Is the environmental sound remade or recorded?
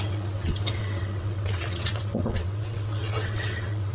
remade